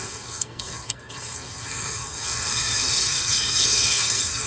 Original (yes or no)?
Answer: no